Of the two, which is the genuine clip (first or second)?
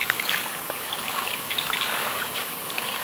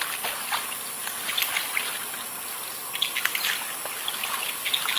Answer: second